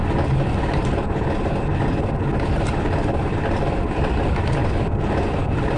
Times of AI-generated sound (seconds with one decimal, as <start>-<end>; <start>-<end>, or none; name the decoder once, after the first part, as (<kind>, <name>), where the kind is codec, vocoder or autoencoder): none